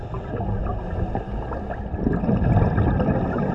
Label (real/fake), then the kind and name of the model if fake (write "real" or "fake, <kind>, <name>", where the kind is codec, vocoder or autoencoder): real